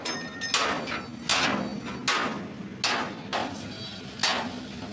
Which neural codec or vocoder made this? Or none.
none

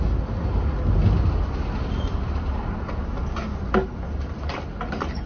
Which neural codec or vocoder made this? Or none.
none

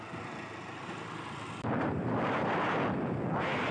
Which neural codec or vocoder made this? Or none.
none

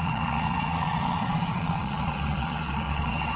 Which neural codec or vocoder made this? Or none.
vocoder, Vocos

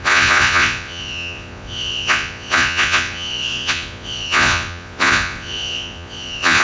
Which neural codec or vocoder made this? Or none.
vocoder, Vocos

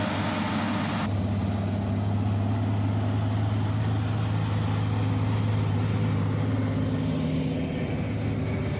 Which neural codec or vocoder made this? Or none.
none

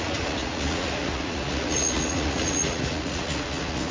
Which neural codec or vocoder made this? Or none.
vocoder, Vocos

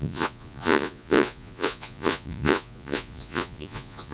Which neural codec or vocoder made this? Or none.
vocoder, Vocos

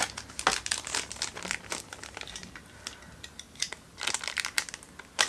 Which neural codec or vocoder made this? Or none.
none